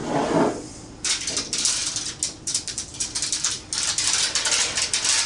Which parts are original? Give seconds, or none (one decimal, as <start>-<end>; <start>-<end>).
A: 0.0-5.3